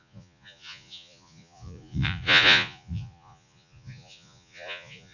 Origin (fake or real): fake